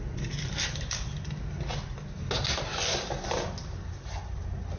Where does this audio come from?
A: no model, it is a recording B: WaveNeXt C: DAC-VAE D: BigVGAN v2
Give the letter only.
A